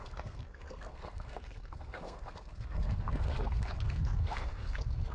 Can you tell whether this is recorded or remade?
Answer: remade